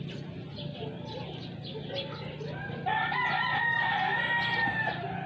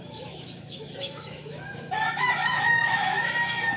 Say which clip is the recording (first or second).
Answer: first